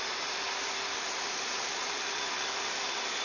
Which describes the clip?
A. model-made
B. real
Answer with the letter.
B